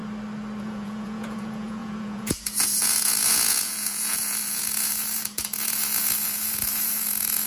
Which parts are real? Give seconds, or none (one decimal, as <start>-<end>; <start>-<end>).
0.0-0.6